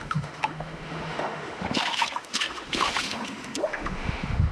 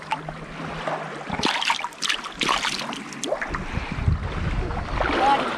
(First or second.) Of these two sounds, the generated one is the first